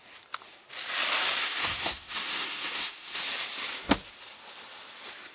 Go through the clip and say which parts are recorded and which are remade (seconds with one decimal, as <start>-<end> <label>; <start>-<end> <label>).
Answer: 0.0-1.4 recorded; 1.4-3.2 remade; 3.2-5.3 recorded